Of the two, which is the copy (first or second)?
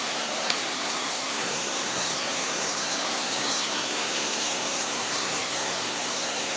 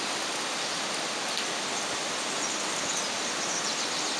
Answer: first